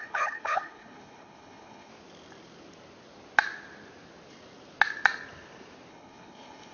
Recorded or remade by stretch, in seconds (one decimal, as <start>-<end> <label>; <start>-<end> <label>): 0.0-1.9 remade; 1.9-5.9 recorded; 5.9-6.7 remade